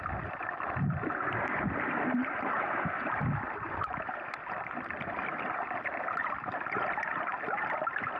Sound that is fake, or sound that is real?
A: real